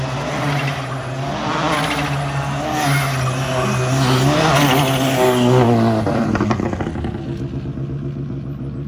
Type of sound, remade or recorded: recorded